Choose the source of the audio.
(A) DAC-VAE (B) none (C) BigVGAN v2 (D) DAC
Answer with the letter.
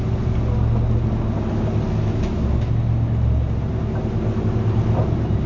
B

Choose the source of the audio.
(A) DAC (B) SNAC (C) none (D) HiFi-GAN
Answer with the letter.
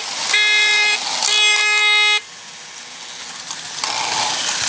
C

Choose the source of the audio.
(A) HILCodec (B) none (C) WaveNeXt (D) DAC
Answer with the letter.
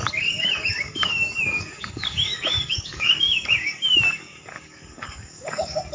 D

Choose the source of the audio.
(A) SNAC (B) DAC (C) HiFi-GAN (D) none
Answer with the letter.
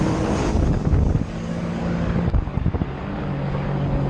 B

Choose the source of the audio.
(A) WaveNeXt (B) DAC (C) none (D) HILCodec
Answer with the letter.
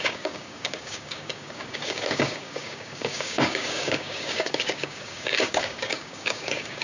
B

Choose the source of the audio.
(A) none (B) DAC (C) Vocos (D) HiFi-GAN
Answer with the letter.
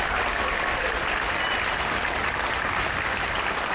A